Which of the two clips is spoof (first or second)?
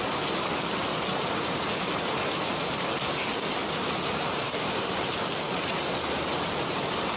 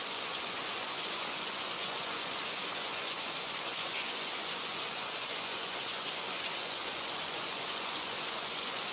second